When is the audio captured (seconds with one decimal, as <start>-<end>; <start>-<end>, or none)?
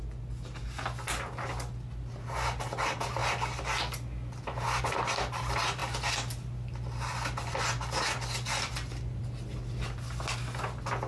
0.0-11.1